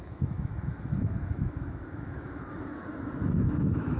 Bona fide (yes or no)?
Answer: no